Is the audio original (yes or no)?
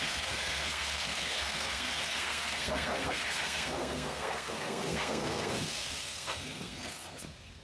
no